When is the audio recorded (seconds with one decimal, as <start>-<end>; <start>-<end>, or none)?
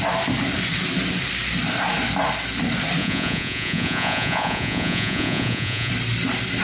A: 0.0-3.0; 5.9-6.6